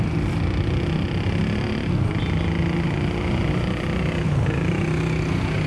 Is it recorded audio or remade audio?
recorded